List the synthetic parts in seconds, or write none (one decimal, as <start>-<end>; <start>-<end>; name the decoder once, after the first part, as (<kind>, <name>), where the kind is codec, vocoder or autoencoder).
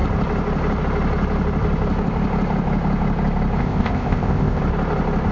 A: 3.6-4.6 (codec, ZipCodec)